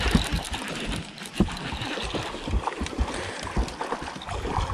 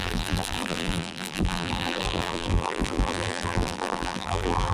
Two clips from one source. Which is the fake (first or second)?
second